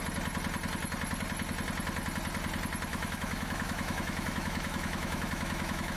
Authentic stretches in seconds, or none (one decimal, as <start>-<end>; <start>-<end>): 0.0-2.9